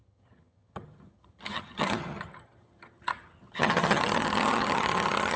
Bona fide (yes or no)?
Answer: no